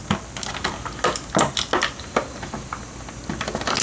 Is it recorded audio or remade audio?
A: recorded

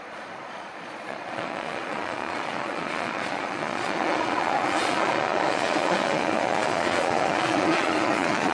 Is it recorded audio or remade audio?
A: remade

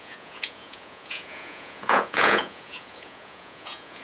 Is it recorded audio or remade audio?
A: remade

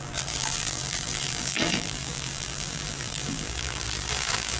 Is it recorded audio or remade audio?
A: remade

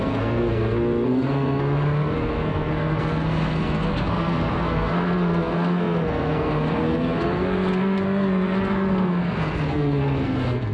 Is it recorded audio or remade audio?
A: remade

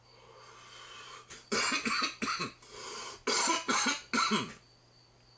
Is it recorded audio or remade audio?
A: recorded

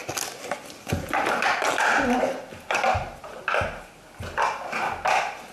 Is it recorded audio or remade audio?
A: recorded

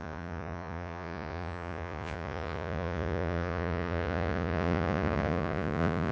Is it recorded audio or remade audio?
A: remade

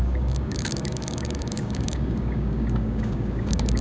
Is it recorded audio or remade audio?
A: remade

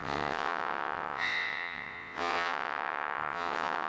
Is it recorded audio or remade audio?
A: remade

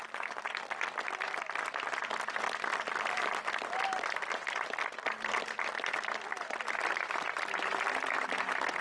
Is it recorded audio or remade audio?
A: recorded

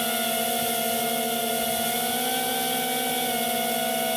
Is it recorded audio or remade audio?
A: recorded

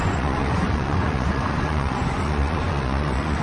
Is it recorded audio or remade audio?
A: remade